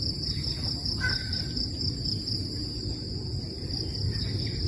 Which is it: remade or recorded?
remade